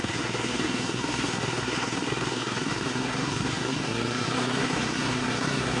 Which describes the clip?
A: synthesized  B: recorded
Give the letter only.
A